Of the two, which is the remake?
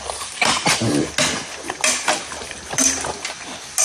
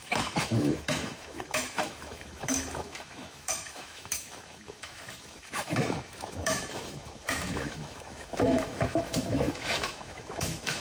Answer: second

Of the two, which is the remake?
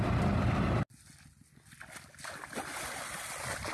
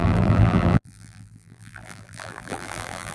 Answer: second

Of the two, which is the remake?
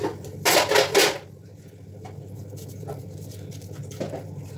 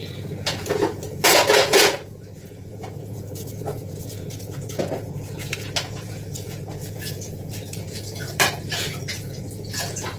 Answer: second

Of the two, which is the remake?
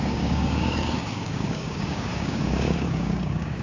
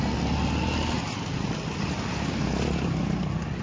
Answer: first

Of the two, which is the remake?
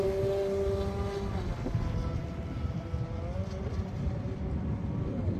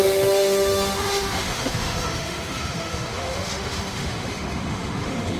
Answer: second